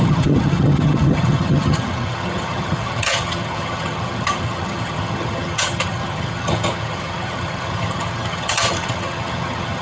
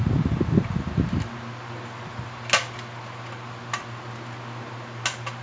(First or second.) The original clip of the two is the second